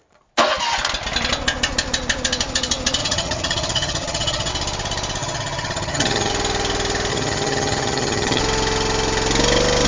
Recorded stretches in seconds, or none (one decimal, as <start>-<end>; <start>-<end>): 0.0-3.0; 4.5-5.2; 6.3-7.1; 8.4-9.9